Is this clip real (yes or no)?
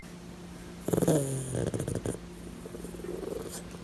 yes